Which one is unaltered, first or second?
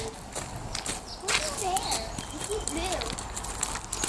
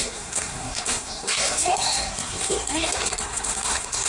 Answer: first